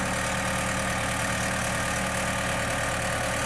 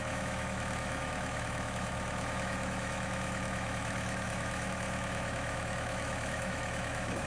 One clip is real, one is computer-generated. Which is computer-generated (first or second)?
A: second